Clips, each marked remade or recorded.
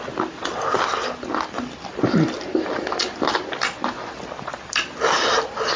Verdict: recorded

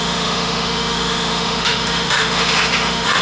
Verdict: remade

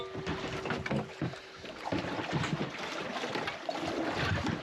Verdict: recorded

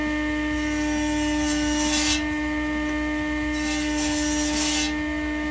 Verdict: recorded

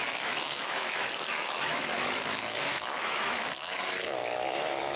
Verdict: remade